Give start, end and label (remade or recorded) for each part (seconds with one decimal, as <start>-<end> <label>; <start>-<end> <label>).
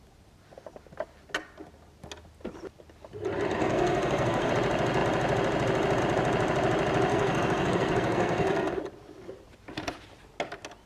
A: 0.0-3.6 recorded; 3.6-4.5 remade; 4.5-7.1 recorded; 7.1-8.8 remade; 8.8-10.9 recorded